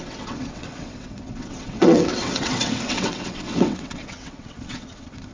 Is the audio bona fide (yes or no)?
no